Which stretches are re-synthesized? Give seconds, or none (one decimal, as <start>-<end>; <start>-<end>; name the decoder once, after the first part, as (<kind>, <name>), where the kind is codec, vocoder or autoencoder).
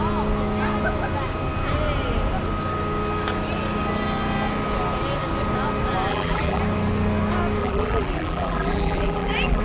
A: 6.1-6.6 (vocoder, BigVGAN v2); 7.6-9.6